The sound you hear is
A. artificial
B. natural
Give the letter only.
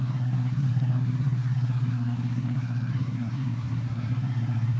A